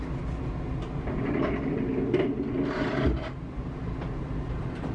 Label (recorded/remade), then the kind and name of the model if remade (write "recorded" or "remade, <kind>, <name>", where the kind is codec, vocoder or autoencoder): recorded